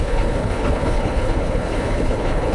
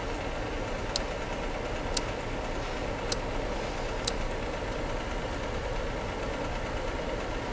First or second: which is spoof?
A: first